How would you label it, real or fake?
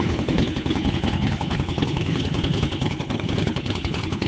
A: fake